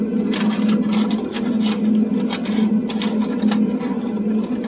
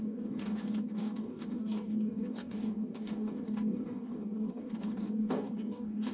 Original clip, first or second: first